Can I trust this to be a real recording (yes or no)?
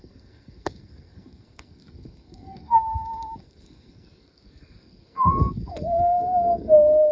no